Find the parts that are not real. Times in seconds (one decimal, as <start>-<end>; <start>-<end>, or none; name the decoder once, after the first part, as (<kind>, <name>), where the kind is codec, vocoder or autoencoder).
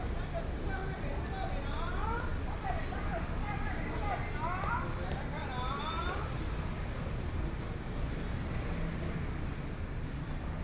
none